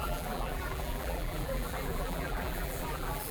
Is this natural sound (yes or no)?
no